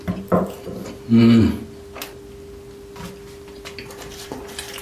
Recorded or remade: recorded